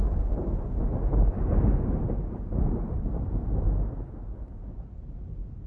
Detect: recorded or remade recorded